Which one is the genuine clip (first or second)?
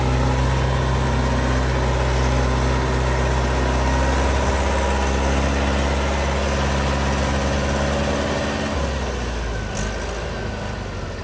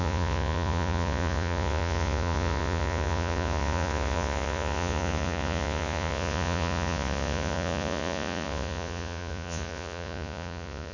first